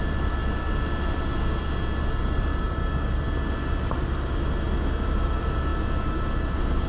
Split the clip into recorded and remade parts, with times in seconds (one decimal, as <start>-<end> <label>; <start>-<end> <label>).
0.0-6.9 recorded